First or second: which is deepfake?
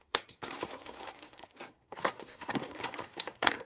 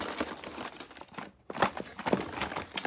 first